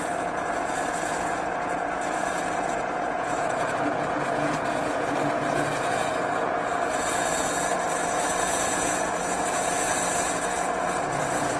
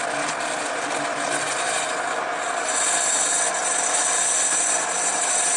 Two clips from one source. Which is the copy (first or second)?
first